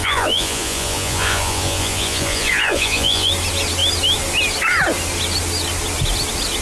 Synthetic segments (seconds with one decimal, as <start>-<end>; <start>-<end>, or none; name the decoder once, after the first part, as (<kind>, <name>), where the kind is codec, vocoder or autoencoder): 0.0-3.3 (vocoder, Vocos)